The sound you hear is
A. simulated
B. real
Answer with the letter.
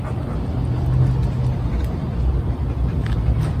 B